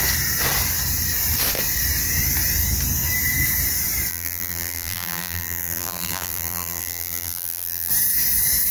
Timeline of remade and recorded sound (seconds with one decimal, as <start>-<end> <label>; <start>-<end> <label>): 0.0-4.1 recorded; 4.1-7.9 remade; 7.9-8.7 recorded